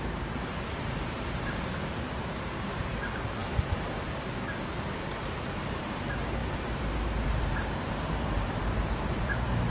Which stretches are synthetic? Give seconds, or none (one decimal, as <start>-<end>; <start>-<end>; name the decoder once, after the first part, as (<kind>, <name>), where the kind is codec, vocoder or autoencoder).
0.0-9.7 (vocoder, BigVGAN v2)

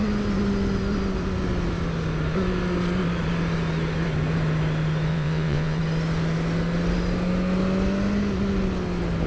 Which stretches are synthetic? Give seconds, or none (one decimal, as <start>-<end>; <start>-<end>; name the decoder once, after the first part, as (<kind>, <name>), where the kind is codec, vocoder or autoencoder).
5.1-5.8 (vocoder, WaveNeXt)

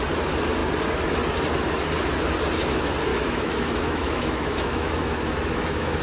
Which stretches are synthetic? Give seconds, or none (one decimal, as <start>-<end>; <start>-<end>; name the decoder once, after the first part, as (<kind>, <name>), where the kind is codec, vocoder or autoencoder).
3.1-6.0 (autoencoder, DAC-VAE)

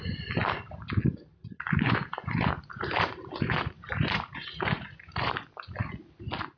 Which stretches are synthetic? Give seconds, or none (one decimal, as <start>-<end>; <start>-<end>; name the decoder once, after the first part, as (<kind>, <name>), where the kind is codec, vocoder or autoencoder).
1.4-5.4 (vocoder, BigVGAN v2)

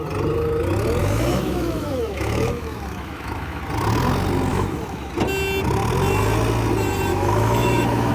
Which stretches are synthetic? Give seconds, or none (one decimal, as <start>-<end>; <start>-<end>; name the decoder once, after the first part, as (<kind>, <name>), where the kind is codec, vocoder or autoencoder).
1.0-3.6 (autoencoder, DAC-VAE); 4.5-5.1; 7.1-8.1

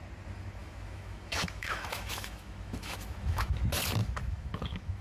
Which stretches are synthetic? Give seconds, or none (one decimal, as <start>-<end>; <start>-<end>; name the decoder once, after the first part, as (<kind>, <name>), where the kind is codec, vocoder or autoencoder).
0.6-3.6 (autoencoder, DAC-VAE); 4.0-5.0

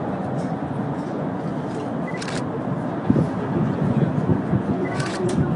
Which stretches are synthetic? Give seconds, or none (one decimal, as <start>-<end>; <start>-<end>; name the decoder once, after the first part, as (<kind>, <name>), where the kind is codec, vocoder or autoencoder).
0.0-1.5 (vocoder, Vocos); 3.6-5.6

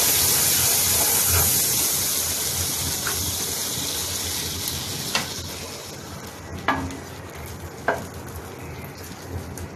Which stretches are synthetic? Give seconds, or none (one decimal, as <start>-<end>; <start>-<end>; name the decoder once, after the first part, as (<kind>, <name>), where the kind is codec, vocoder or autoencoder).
none